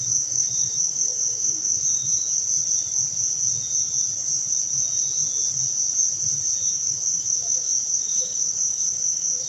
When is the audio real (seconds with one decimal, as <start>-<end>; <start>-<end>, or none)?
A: 2.1-6.6